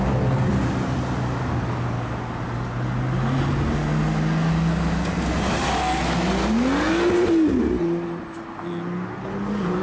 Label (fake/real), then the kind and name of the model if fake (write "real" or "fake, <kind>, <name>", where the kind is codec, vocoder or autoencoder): real